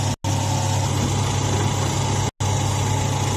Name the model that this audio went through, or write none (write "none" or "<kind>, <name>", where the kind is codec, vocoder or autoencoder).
none